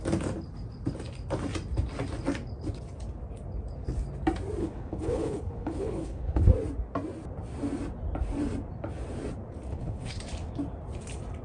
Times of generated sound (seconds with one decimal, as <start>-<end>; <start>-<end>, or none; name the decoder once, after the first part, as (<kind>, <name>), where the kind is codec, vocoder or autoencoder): 4.6-6.5 (codec, HILCodec); 9.7-10.2